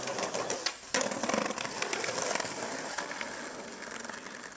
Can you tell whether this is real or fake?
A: real